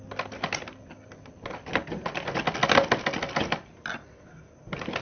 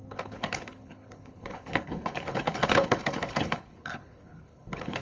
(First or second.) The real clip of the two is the first